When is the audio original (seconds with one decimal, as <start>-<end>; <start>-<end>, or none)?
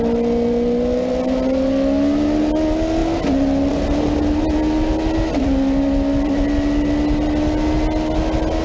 0.0-8.6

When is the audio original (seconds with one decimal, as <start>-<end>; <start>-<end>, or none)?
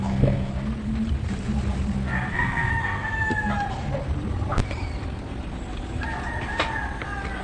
0.5-2.3; 2.7-7.4